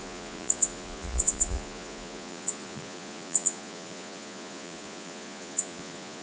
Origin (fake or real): fake